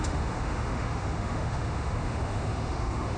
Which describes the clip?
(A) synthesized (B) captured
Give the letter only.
A